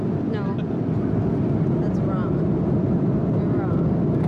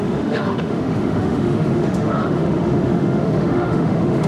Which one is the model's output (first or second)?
second